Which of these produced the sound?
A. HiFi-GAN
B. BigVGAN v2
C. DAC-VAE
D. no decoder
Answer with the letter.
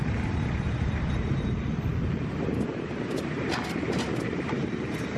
B